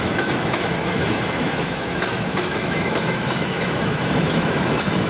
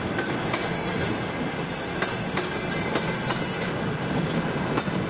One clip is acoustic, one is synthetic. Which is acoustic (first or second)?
second